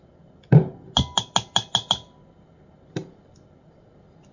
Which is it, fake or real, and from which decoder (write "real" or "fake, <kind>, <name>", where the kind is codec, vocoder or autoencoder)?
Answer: real